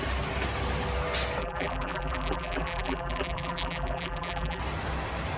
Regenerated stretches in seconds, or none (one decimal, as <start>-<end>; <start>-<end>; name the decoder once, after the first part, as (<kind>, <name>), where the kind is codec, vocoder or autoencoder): 1.4-4.6 (vocoder, BigVGAN v2)